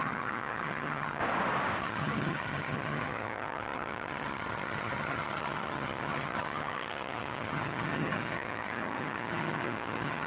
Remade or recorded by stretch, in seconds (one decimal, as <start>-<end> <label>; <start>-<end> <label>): 0.0-1.2 remade; 1.2-1.8 recorded; 1.8-10.3 remade